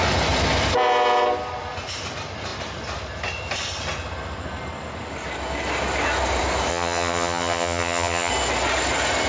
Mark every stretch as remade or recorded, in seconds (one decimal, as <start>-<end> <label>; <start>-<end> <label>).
0.0-6.7 recorded; 6.7-8.3 remade; 8.3-9.3 recorded